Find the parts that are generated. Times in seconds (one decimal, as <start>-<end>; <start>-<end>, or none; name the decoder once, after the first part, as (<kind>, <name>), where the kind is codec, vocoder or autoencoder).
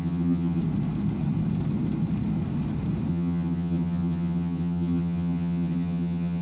0.0-0.6 (vocoder, HiFi-GAN); 3.1-6.4